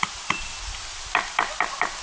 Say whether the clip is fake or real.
real